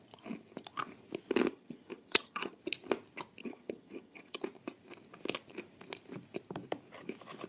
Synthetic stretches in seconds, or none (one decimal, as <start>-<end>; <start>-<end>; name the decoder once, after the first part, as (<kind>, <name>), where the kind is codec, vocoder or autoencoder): 1.5-2.6 (vocoder, HiFi-GAN); 3.4-4.4